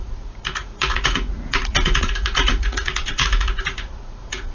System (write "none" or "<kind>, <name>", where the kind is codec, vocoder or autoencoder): vocoder, Vocos